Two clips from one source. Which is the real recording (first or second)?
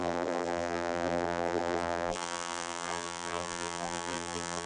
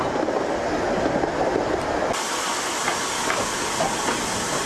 second